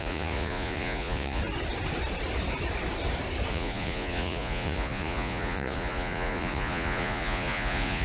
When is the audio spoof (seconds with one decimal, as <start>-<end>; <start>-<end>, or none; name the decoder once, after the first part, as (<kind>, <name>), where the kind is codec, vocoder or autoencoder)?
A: 0.0-1.4 (vocoder, Vocos); 3.5-8.0